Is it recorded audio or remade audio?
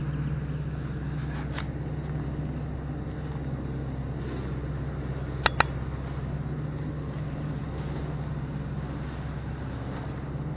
recorded